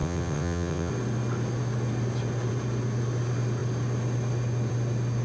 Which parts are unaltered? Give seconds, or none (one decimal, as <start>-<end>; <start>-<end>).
0.9-5.2